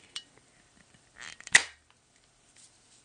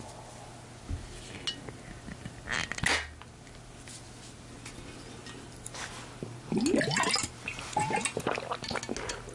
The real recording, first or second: second